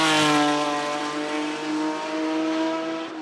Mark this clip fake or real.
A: real